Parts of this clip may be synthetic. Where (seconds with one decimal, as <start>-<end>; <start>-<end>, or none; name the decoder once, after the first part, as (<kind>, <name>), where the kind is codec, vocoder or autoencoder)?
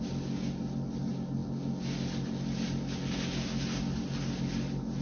none